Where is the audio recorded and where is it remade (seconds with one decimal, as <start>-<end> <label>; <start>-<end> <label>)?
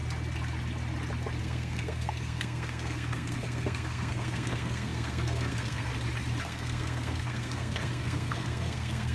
0.0-1.4 recorded; 1.4-5.9 remade; 5.9-6.4 recorded; 6.4-9.1 remade